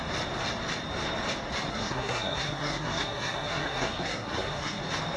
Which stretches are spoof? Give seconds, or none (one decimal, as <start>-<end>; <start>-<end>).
1.7-4.8